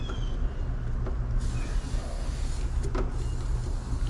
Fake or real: real